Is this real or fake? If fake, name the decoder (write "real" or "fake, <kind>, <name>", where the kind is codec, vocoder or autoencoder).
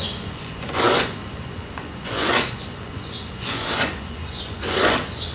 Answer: fake, vocoder, Vocos